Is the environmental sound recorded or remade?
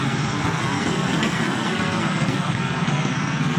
remade